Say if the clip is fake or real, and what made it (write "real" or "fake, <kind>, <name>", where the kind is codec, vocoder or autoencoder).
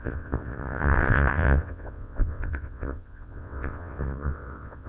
fake, vocoder, WaveNeXt